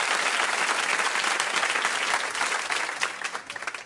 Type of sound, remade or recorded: recorded